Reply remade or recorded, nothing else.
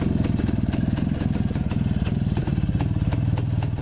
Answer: recorded